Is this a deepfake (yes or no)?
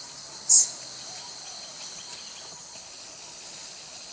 no